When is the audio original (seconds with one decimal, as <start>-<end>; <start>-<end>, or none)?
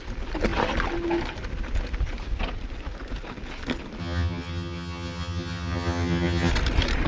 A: 0.0-4.0; 6.5-7.1